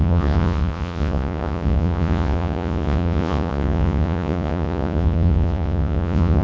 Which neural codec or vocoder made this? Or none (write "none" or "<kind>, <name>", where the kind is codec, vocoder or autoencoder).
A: vocoder, Vocos